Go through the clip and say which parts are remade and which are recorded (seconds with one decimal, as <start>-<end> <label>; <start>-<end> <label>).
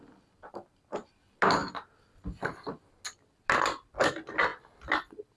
0.0-5.4 recorded